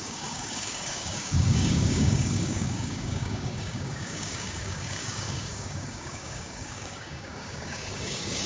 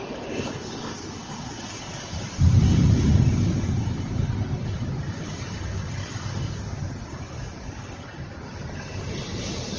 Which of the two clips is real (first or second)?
second